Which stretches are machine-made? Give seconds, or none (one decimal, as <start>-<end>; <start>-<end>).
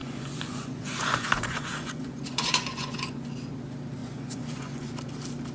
0.0-3.3; 4.0-4.9